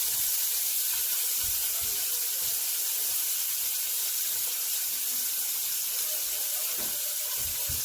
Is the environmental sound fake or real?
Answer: real